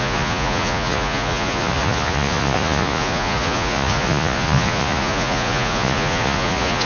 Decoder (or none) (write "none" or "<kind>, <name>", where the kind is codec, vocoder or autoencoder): vocoder, Vocos